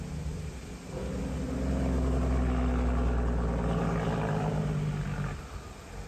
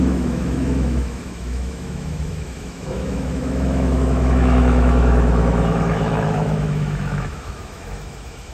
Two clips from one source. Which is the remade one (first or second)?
second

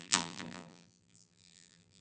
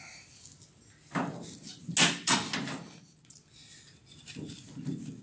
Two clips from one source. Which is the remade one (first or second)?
first